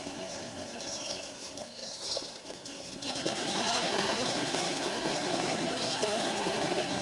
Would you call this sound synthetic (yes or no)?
yes